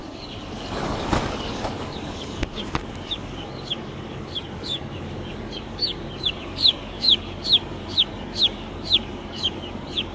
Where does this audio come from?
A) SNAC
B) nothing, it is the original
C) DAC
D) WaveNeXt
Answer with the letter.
C